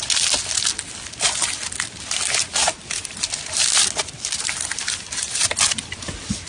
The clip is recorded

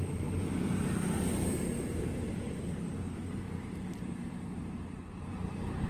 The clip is remade